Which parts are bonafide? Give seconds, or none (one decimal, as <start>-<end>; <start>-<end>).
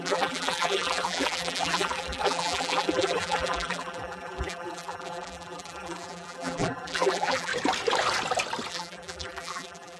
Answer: 7.5-8.7